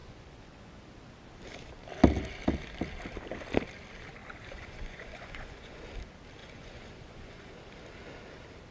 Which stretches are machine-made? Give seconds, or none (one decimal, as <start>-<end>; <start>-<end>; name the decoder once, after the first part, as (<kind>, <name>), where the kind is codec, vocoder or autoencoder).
0.0-0.8 (vocoder, Vocos); 4.2-5.8; 6.4-7.5